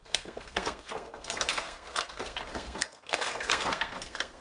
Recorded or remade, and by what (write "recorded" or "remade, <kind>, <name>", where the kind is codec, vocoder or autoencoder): remade, codec, SNAC